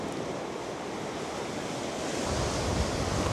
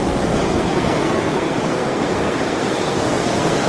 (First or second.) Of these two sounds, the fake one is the second